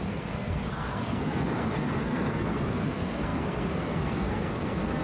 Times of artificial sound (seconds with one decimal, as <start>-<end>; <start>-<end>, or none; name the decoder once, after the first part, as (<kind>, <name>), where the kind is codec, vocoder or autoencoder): 0.0-5.0 (codec, SNAC)